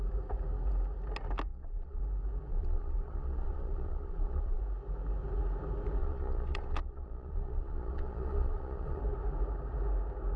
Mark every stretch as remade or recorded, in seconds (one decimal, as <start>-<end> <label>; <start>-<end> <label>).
0.0-1.5 recorded; 1.5-2.0 remade; 2.0-2.5 recorded; 2.5-4.6 remade; 4.6-6.0 recorded; 6.0-9.0 remade; 9.0-10.4 recorded